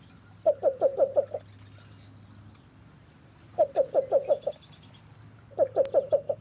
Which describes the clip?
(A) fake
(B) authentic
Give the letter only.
B